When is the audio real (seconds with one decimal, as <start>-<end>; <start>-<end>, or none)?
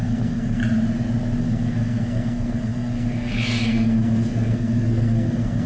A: 0.6-1.4